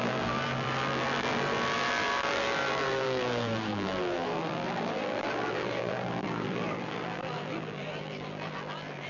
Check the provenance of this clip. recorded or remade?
remade